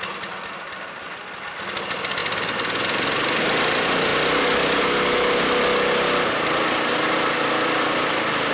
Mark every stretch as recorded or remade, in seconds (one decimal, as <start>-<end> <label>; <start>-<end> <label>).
0.0-4.1 remade; 4.1-6.7 recorded; 6.7-8.5 remade